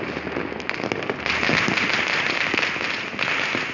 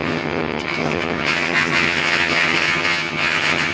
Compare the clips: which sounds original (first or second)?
first